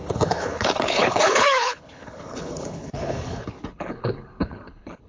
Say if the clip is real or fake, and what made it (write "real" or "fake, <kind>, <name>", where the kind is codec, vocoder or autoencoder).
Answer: fake, codec, HILCodec